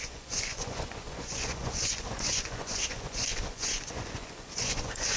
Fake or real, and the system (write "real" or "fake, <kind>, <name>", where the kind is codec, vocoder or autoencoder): fake, vocoder, Vocos